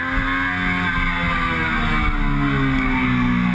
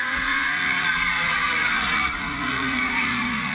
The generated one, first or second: second